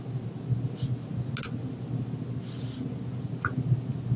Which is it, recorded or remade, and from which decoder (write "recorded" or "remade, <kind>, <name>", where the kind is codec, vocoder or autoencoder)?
recorded